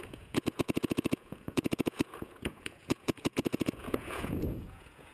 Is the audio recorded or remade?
remade